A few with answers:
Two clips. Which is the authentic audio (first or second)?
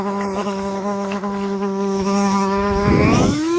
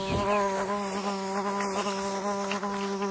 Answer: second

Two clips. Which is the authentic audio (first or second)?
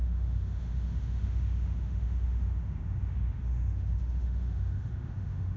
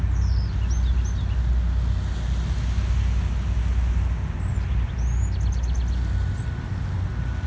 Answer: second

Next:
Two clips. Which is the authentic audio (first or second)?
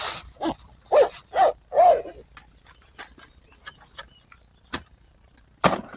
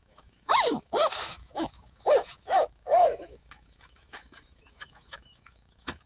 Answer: first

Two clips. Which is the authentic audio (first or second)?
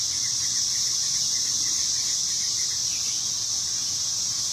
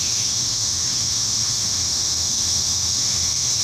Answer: first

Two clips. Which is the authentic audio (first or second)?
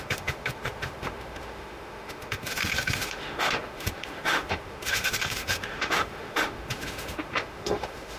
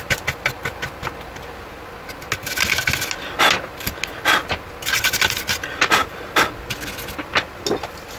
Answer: second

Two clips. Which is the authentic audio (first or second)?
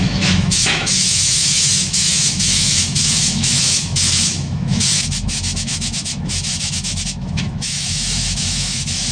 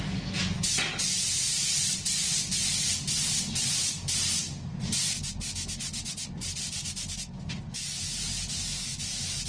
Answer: second